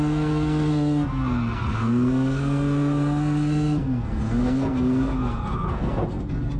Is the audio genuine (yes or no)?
no